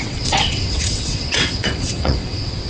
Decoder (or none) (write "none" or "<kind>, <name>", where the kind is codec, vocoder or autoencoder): vocoder, WaveNeXt